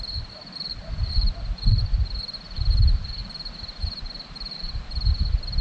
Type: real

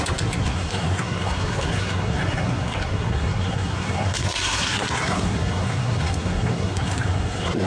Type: fake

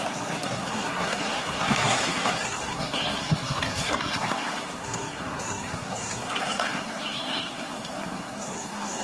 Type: fake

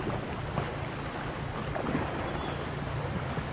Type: real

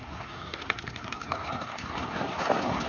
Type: fake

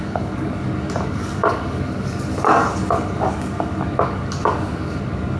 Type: fake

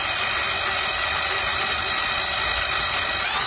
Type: real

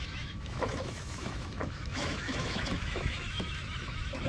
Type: fake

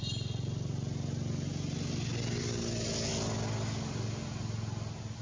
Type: real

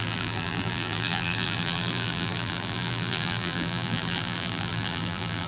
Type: fake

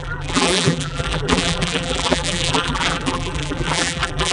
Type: fake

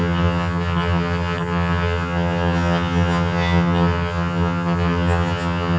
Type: fake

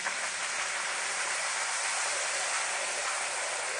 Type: real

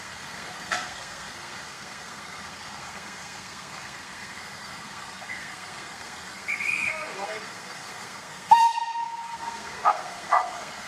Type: fake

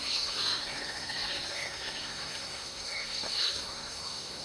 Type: fake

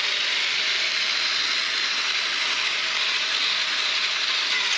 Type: fake